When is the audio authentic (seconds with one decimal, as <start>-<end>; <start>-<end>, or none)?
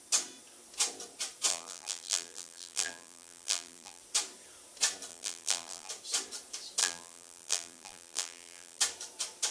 0.0-1.5; 4.0-5.1; 5.9-6.8; 8.8-9.5